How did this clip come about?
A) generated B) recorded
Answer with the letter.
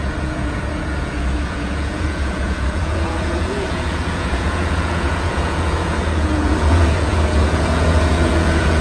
A